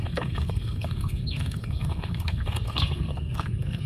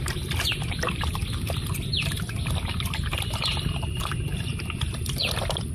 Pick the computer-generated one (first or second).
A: first